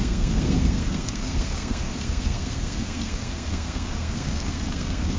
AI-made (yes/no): yes